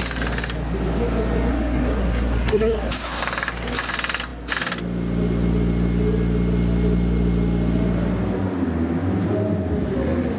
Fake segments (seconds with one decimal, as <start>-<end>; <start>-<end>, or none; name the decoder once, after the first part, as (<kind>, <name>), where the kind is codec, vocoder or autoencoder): 1.5-3.2 (codec, SNAC)